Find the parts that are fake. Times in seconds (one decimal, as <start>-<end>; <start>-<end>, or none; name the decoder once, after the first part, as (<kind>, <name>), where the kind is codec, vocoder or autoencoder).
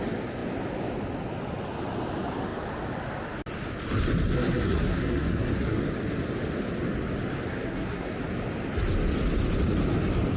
4.3-5.8 (codec, SNAC); 7.5-8.1